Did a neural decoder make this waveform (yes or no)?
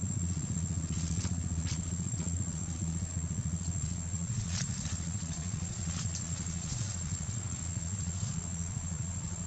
yes